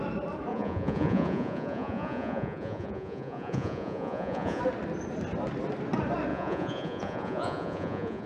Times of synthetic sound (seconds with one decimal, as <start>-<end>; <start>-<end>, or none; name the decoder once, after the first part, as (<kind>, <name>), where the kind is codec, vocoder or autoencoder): 0.5-4.6 (vocoder, Vocos); 6.3-8.3